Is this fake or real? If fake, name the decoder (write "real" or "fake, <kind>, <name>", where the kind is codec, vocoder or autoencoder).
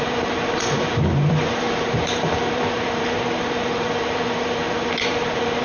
fake, vocoder, BigVGAN v2